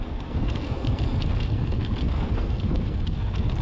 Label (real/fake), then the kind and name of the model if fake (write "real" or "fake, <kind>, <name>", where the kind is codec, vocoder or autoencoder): fake, codec, SNAC